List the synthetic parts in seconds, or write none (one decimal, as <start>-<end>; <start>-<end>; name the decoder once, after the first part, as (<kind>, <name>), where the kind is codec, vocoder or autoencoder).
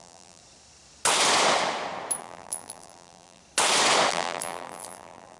0.0-0.4 (vocoder, BigVGAN v2); 2.2-3.4; 4.1-5.4